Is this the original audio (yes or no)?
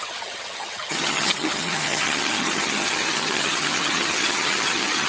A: no